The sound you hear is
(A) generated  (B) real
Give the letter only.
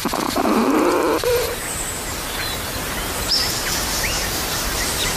A